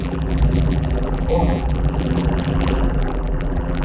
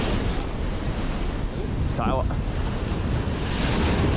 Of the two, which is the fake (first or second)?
first